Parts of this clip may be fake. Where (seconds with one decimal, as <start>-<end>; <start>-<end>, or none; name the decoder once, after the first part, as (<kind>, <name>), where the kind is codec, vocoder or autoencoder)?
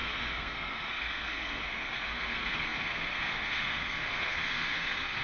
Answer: 0.0-5.2 (codec, SNAC)